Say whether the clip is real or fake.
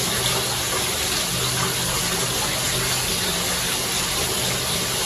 real